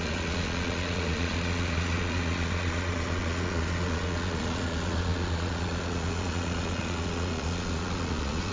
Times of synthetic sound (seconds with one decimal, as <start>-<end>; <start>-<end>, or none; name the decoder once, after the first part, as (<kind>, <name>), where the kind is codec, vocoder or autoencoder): 0.0-8.5 (vocoder, Vocos)